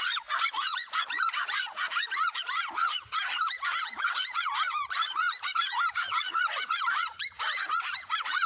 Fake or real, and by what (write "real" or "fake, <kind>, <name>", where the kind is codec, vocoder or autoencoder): fake, vocoder, Vocos